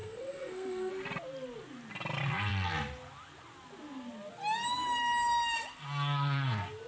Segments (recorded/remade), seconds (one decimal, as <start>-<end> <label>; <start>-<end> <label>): 0.0-0.9 remade; 0.9-6.9 recorded